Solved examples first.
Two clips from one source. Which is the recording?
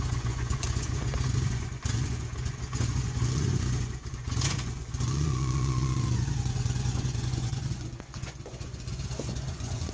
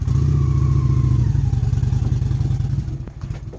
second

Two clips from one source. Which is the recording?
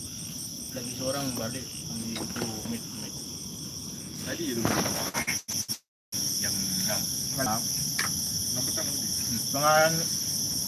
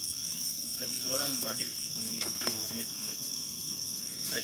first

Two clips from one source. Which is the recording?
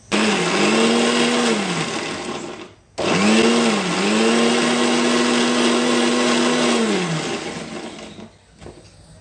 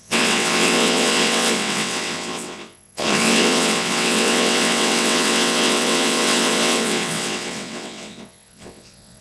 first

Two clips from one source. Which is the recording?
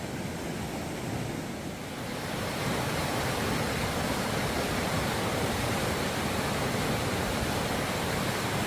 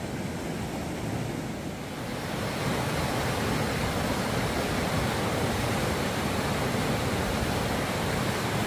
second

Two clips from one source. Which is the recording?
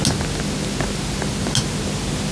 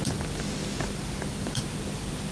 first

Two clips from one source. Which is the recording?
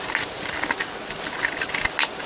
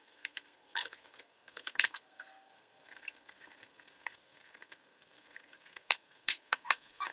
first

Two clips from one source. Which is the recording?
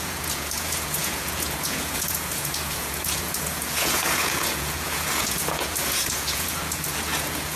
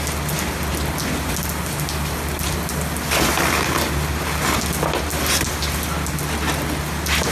second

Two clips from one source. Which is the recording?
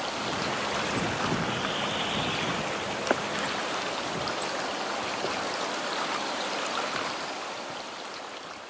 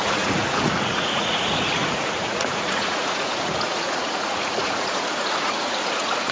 first